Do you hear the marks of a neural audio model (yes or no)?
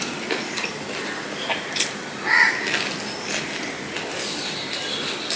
no